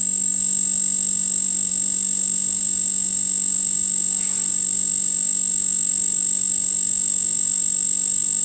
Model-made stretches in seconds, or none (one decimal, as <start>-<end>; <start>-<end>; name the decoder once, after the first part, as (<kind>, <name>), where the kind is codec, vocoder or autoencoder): none